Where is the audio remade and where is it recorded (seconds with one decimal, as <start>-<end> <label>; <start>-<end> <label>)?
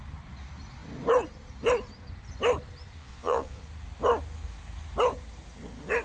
0.0-3.0 recorded; 3.0-3.6 remade; 3.6-6.0 recorded